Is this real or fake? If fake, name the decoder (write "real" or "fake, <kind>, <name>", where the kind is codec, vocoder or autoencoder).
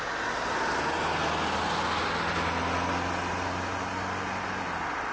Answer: real